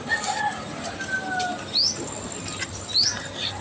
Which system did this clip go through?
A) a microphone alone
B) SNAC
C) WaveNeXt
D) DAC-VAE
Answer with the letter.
A